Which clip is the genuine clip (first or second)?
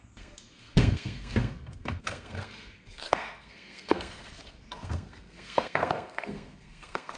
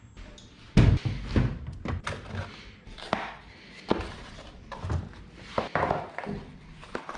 second